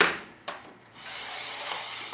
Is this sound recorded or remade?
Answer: remade